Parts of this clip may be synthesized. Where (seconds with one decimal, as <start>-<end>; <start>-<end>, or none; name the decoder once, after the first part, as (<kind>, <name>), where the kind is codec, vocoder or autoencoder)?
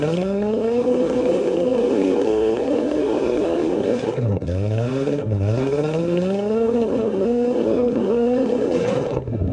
0.0-9.5 (codec, SNAC)